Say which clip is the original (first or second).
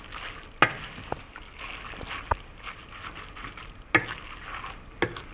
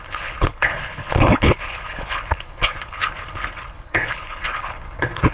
first